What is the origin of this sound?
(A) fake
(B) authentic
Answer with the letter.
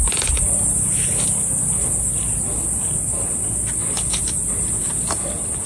B